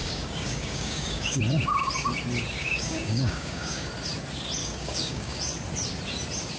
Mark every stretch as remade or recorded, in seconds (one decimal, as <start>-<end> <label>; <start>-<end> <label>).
0.0-1.4 remade; 1.4-2.6 recorded; 2.6-3.9 remade; 3.9-4.6 recorded; 4.6-5.4 remade; 5.4-6.6 recorded